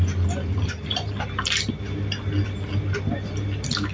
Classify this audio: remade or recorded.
recorded